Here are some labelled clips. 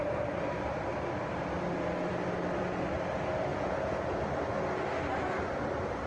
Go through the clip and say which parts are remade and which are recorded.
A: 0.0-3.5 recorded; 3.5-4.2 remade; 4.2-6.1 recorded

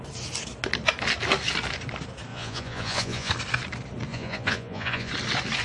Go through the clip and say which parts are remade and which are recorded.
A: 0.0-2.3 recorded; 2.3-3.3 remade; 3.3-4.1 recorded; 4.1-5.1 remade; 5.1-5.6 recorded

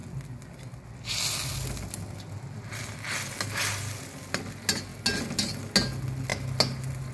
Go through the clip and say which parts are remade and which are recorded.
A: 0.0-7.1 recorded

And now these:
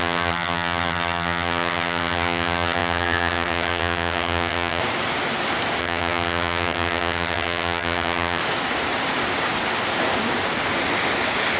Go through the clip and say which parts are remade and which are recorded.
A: 0.0-4.8 remade; 4.8-5.8 recorded; 5.8-8.4 remade; 8.4-11.6 recorded

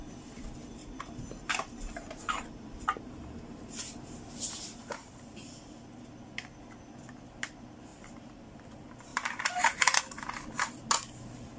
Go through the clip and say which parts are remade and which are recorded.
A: 0.0-0.8 recorded; 0.8-5.1 remade; 5.1-9.1 recorded; 9.1-10.0 remade; 10.0-11.6 recorded

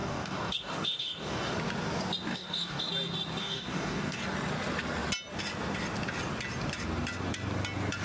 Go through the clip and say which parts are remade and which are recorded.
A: 0.0-1.5 remade; 1.5-2.3 recorded; 2.3-2.9 remade; 2.9-3.4 recorded; 3.4-4.2 remade; 4.2-8.0 recorded

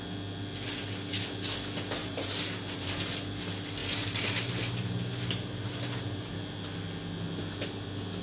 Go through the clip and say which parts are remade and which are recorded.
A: 0.0-2.0 recorded; 2.0-3.1 remade; 3.1-3.8 recorded; 3.8-6.3 remade; 6.3-8.2 recorded